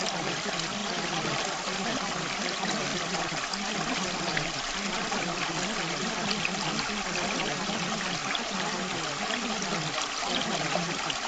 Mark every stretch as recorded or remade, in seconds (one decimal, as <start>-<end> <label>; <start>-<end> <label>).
0.0-11.3 recorded